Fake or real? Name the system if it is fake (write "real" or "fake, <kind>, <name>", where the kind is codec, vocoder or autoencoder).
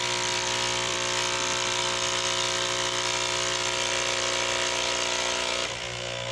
fake, vocoder, BigVGAN v2